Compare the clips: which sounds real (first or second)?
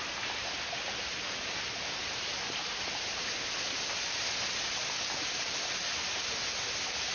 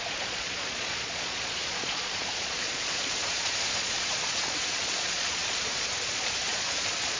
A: first